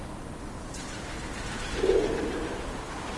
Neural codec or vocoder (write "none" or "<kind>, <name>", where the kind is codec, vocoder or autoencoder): none